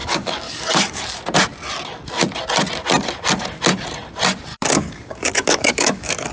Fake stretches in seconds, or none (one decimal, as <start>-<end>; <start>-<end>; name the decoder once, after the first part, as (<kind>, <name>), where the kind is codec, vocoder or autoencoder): 0.0-1.0 (codec, DAC); 4.5-6.3